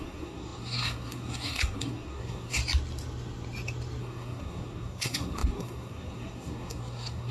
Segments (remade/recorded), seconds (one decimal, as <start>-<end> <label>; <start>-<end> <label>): 0.0-2.6 remade; 2.6-4.0 recorded; 4.0-7.3 remade

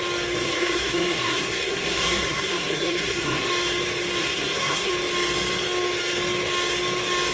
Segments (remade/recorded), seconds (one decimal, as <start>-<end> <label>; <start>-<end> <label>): 0.0-0.4 recorded; 0.4-3.5 remade; 3.5-4.2 recorded; 4.2-4.9 remade; 4.9-7.3 recorded

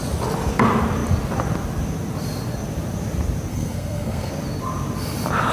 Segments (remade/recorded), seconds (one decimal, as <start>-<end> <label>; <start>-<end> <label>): 0.0-3.5 recorded; 3.5-4.3 remade; 4.3-5.5 recorded

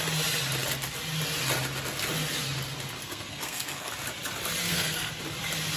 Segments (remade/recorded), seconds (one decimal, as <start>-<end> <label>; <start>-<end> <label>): 0.0-3.0 recorded; 3.0-3.9 remade; 3.9-4.6 recorded; 4.6-5.1 remade; 5.1-5.8 recorded

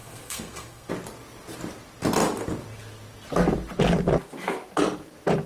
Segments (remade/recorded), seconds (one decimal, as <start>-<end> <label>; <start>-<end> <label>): 0.0-0.9 remade; 0.9-5.5 recorded

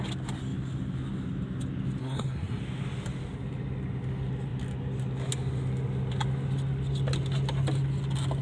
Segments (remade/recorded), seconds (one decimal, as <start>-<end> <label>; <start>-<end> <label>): 0.0-2.0 recorded; 2.0-2.6 remade; 2.6-8.4 recorded